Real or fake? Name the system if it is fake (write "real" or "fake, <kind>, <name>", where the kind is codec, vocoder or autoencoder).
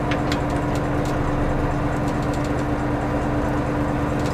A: real